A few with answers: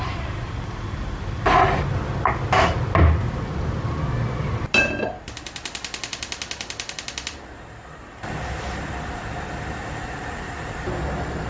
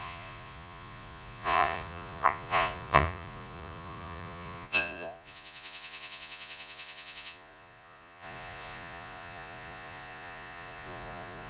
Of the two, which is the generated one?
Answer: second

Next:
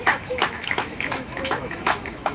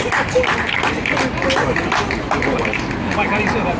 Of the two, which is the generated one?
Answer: first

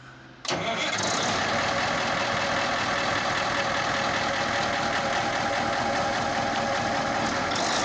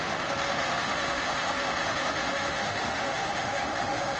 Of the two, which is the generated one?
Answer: second